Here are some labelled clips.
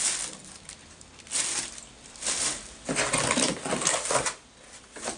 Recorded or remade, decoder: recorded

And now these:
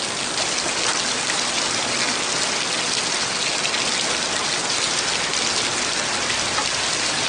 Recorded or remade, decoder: recorded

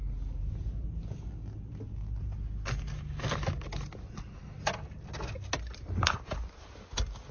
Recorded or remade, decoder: recorded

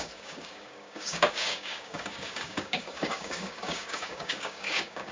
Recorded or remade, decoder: remade, codec, DAC